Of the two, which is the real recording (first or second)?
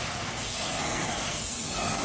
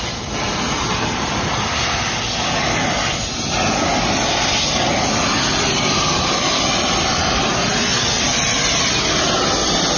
second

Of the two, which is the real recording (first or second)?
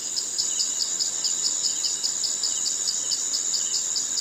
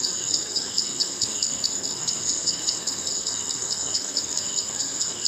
first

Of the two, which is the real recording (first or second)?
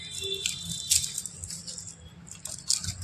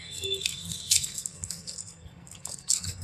first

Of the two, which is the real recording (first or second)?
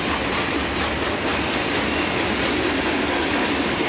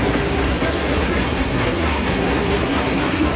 first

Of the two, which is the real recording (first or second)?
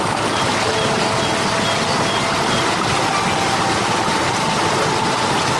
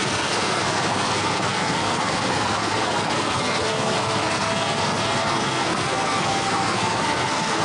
first